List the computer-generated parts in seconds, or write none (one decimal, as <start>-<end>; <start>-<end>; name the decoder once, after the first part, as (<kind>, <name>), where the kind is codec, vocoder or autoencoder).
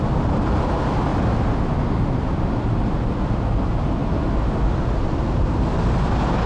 none